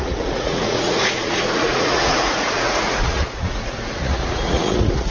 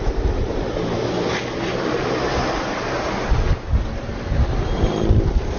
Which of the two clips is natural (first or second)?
second